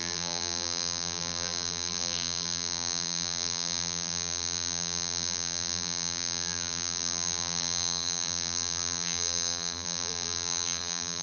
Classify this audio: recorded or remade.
remade